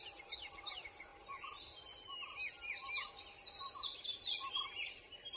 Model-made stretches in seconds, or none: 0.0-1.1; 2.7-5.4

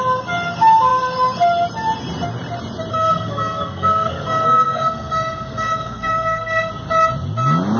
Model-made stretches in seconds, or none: 2.9-6.7

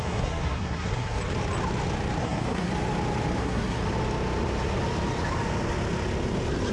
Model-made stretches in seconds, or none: 0.0-1.2; 2.2-2.7; 3.4-3.8

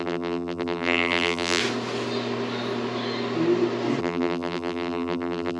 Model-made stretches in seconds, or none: 0.0-1.6; 4.0-5.6

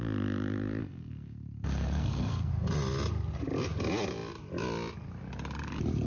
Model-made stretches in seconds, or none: 0.8-2.5

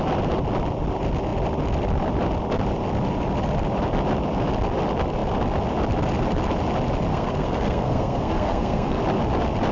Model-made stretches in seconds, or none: 7.1-9.0

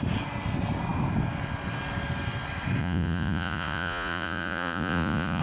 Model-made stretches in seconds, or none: 2.8-5.4